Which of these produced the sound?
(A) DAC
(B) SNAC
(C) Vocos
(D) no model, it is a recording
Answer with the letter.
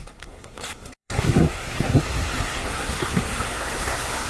B